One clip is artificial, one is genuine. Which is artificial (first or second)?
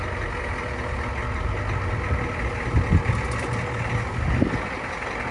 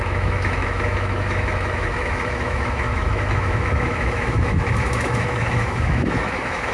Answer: second